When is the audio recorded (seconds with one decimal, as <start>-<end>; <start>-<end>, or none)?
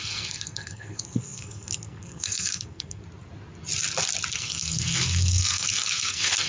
3.0-4.3